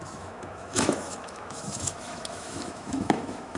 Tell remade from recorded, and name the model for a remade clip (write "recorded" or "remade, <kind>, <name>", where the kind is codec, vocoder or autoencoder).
remade, autoencoder, DAC-VAE